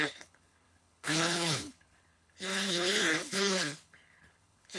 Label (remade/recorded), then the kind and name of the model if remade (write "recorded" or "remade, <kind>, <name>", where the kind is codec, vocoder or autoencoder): remade, codec, HILCodec